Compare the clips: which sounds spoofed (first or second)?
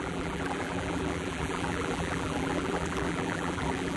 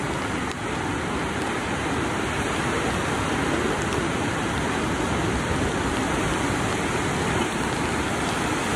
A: first